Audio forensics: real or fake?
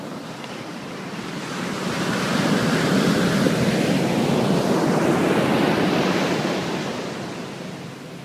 real